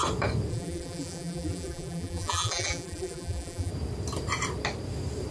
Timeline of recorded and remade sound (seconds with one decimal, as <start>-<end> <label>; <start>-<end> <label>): 0.0-0.5 recorded; 0.5-3.7 remade; 3.7-5.3 recorded